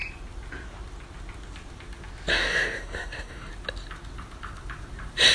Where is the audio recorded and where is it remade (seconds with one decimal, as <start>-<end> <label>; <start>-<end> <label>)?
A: 0.0-2.3 recorded; 2.3-3.5 remade; 3.5-5.3 recorded